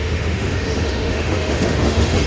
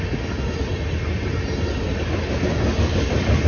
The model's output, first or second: first